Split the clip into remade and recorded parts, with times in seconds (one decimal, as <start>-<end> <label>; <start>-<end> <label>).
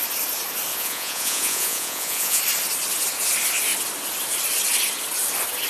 0.0-0.7 recorded; 0.7-2.4 remade; 2.4-5.7 recorded